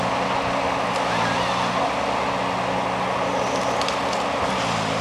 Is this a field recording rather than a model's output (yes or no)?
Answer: yes